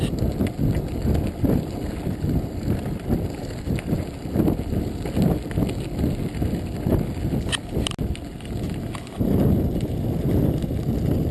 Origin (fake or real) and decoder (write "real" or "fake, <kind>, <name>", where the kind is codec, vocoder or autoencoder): real